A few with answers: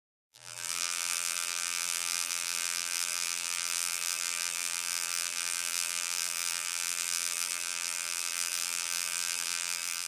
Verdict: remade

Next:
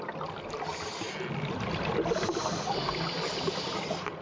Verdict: recorded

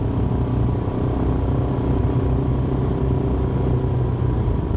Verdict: recorded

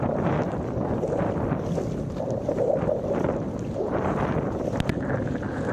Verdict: recorded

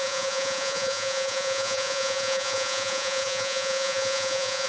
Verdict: remade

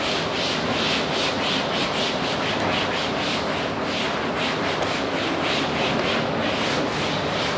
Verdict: recorded